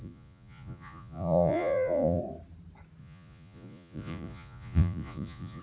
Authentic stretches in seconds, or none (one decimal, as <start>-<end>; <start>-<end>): 2.2-3.0